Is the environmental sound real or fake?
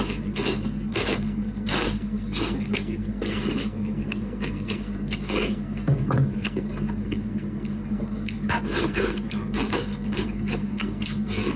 fake